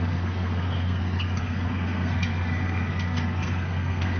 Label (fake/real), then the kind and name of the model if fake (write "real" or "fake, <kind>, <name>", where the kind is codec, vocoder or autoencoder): fake, codec, SNAC